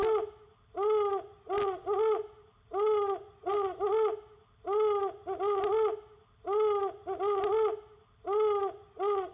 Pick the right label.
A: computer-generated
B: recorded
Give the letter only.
B